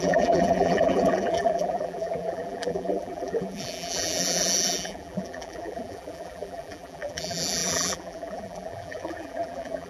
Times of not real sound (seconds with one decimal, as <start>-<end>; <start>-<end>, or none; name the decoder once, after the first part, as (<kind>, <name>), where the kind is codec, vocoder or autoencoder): 0.0-9.9 (vocoder, BigVGAN v2)